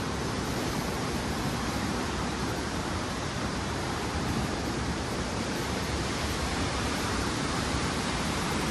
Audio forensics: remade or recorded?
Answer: remade